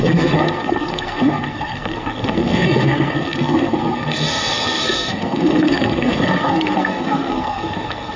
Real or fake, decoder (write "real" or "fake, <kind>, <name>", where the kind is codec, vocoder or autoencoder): fake, codec, SNAC